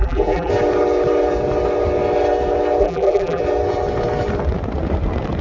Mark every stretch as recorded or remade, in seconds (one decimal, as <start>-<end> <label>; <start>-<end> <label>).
0.0-0.5 remade; 0.5-2.8 recorded; 2.8-3.4 remade; 3.4-5.4 recorded